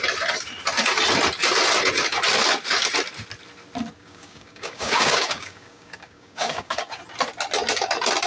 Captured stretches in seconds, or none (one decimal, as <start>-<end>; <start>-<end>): 0.0-4.0; 7.0-8.3